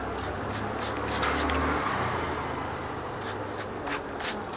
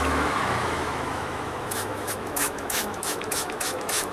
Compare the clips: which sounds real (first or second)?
first